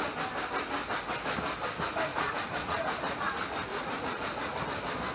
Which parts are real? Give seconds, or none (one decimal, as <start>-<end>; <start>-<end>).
0.0-2.1; 3.3-3.7; 4.6-5.1